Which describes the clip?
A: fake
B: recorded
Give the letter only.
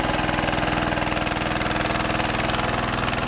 B